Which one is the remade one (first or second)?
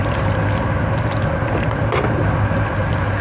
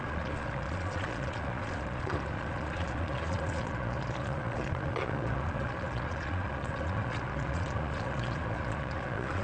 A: second